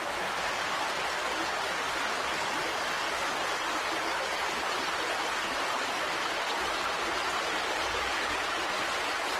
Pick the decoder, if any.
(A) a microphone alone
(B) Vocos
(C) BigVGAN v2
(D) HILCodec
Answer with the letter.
A